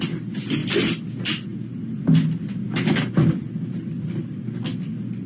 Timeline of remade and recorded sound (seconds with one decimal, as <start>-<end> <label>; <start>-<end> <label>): 0.0-0.6 recorded; 0.6-1.1 remade; 1.1-5.3 recorded